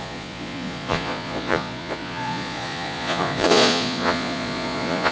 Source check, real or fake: fake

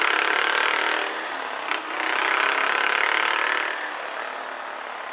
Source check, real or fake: real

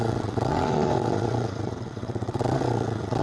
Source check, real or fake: fake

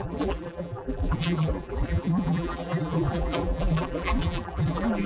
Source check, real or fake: fake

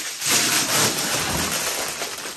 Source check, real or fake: real